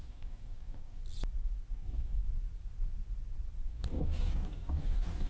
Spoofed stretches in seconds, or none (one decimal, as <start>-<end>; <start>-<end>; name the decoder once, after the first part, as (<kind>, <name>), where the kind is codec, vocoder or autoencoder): 0.0-1.0 (codec, DAC); 1.7-2.2; 3.7-5.3